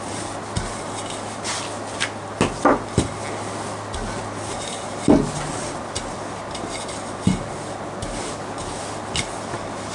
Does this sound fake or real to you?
real